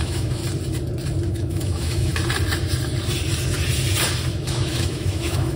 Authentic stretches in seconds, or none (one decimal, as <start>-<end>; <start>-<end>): 0.4-1.3; 2.1-4.3